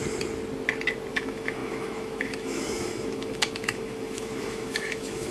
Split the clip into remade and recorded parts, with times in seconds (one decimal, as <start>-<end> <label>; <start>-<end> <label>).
0.0-1.1 recorded; 1.1-5.3 remade